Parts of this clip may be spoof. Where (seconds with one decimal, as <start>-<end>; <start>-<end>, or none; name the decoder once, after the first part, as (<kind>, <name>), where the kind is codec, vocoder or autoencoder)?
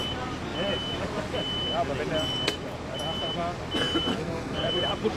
4.1-4.7 (codec, SNAC)